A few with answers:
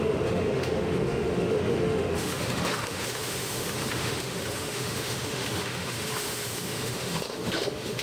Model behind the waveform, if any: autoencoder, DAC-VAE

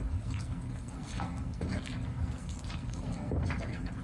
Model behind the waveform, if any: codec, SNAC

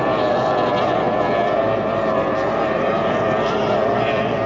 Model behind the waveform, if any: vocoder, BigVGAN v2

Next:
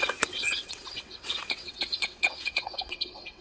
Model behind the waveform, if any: vocoder, WaveNeXt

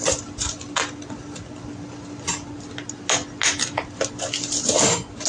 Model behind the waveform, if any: none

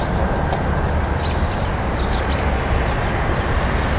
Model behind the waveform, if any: none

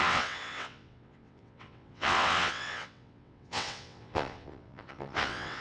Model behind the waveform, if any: vocoder, WaveNeXt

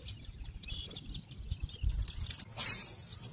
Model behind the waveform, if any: none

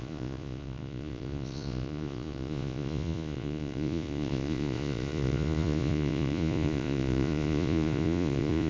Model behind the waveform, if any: vocoder, Vocos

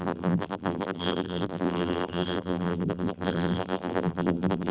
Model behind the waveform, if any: vocoder, BigVGAN v2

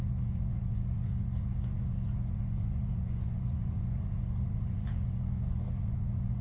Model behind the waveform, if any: vocoder, Vocos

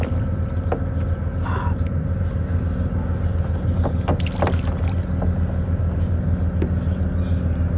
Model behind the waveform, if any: none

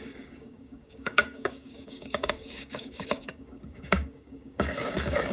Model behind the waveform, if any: codec, DAC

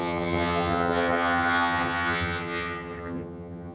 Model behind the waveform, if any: vocoder, HiFi-GAN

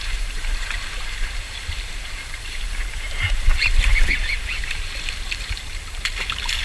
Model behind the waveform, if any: vocoder, BigVGAN v2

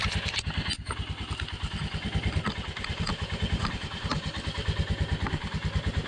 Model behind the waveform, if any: vocoder, BigVGAN v2